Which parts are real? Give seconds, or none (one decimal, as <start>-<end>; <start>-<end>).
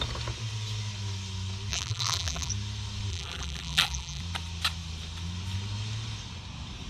0.0-1.7; 2.5-3.1; 4.2-6.9